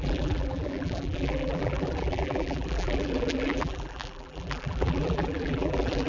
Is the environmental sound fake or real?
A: fake